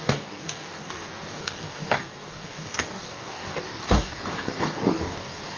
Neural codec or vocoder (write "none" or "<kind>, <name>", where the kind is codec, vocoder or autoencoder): codec, DAC